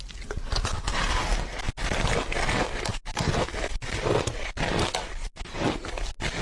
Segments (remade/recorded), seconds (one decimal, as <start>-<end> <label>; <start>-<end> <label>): 0.0-6.4 recorded